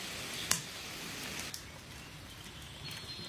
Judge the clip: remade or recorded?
recorded